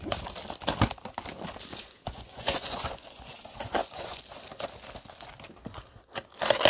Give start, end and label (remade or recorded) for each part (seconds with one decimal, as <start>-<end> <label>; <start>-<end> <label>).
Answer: 0.0-1.7 recorded; 1.7-4.2 remade; 4.2-6.7 recorded